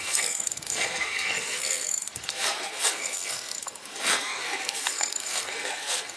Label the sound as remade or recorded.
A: remade